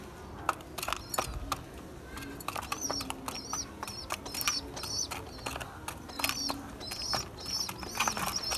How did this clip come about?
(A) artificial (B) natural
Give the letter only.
B